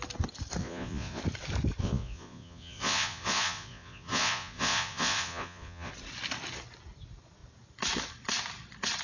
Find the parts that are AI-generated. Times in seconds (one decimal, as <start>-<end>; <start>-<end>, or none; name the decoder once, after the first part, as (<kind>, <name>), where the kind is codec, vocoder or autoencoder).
0.6-1.2 (vocoder, Vocos); 1.8-5.9